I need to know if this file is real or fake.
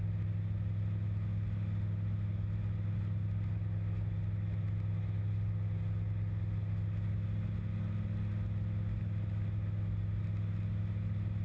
real